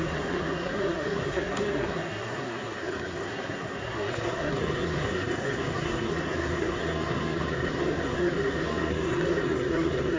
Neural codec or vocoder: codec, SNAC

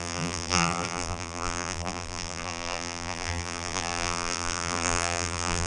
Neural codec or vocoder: vocoder, BigVGAN v2